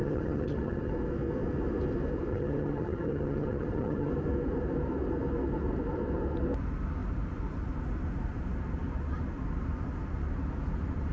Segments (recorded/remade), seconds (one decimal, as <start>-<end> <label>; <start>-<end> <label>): 0.0-0.9 remade; 0.9-2.3 recorded; 2.3-4.1 remade; 4.1-11.1 recorded